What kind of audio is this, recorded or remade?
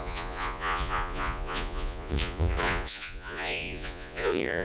remade